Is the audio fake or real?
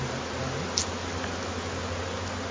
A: real